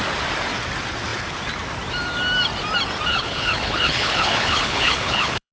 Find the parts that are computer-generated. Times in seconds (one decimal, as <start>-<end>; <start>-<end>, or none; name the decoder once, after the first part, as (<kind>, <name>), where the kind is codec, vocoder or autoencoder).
3.1-5.5 (codec, HILCodec)